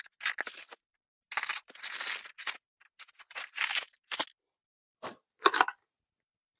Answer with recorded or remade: recorded